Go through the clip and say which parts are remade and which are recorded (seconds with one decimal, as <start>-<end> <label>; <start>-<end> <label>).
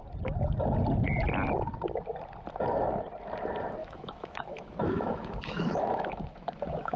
0.0-3.8 recorded; 3.8-7.0 remade